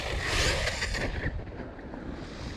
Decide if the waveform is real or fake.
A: fake